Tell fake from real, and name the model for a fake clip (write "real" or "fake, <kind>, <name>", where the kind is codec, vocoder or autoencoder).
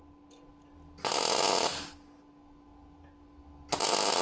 real